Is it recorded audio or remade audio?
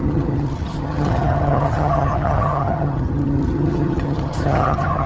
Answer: remade